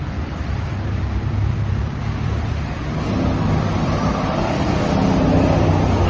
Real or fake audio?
fake